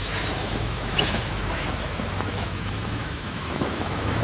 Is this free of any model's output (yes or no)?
no